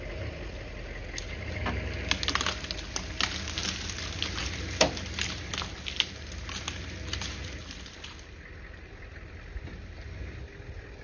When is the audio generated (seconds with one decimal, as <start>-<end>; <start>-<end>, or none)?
none